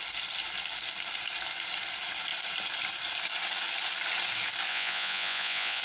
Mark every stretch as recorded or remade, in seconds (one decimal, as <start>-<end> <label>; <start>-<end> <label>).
0.0-4.7 recorded; 4.7-5.8 remade